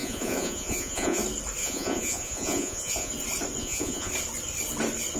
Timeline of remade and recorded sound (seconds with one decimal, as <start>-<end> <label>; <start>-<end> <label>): 0.0-1.2 remade; 1.2-1.6 recorded; 1.6-3.1 remade; 3.1-3.6 recorded; 3.6-4.1 remade; 4.1-5.2 recorded